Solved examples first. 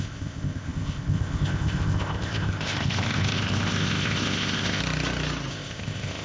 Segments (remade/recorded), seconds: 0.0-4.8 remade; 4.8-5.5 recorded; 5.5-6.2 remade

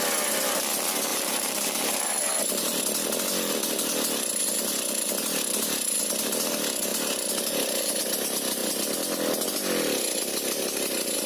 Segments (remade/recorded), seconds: 0.0-1.1 recorded; 1.1-2.8 remade; 2.8-11.3 recorded

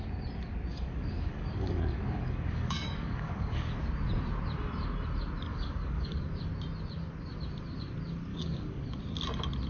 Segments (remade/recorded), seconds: 0.0-0.7 recorded; 0.7-3.7 remade; 3.7-5.5 recorded; 5.5-6.2 remade; 6.2-8.3 recorded; 8.3-9.0 remade; 9.0-9.7 recorded